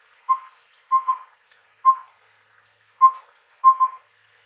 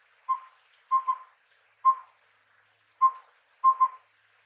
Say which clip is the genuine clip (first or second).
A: second